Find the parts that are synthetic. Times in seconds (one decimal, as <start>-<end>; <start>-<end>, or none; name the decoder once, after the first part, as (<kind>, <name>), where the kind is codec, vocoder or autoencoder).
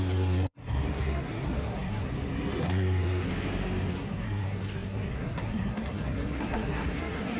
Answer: 0.0-3.3 (codec, SNAC); 3.9-7.4